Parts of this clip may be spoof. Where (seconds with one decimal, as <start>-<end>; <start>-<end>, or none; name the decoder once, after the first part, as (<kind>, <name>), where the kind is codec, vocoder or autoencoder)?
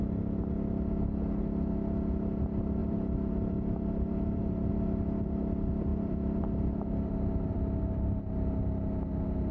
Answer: 2.8-4.7 (vocoder, BigVGAN v2); 5.9-8.2